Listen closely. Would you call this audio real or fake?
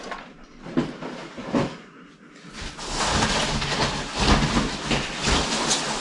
real